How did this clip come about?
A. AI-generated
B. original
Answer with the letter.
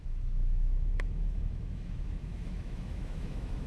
A